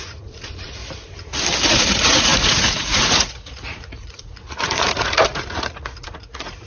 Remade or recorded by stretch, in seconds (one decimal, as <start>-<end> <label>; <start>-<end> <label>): 0.0-0.8 remade; 0.8-1.7 recorded; 1.7-6.7 remade